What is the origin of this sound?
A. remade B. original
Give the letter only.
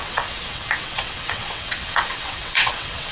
A